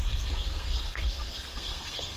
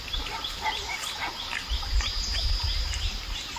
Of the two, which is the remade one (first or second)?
first